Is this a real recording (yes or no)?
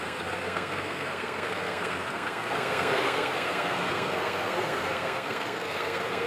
no